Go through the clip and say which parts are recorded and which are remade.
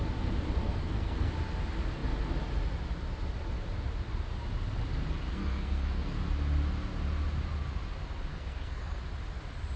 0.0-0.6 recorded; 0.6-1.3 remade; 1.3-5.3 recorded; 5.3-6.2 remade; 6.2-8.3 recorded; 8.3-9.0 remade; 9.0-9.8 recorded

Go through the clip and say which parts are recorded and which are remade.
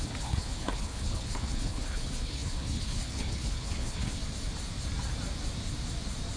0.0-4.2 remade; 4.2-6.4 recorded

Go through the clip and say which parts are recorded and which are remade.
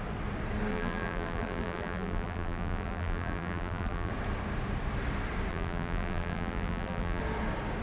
0.0-0.7 recorded; 0.7-4.1 remade; 4.1-5.5 recorded; 5.5-7.2 remade; 7.2-7.8 recorded